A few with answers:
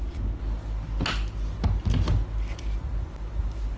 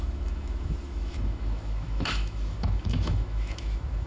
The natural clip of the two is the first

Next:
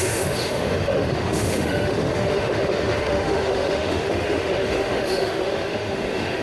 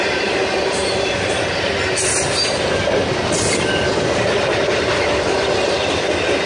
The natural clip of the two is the second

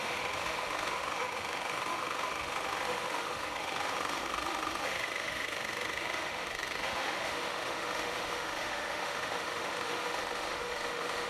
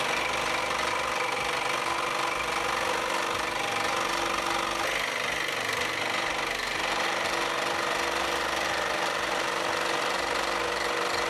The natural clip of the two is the second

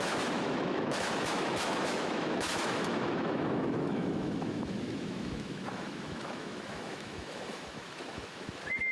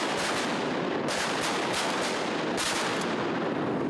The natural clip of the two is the second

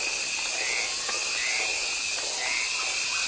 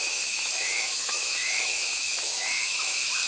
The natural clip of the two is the first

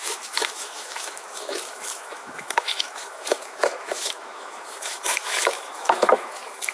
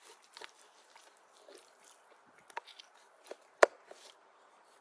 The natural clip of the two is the second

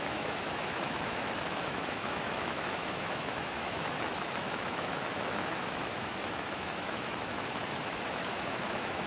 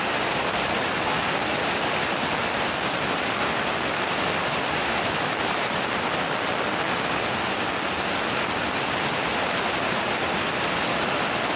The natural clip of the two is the second